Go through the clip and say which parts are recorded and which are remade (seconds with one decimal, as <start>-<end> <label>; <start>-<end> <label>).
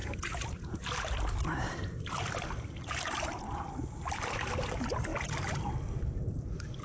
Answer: 0.0-0.9 remade; 0.9-6.8 recorded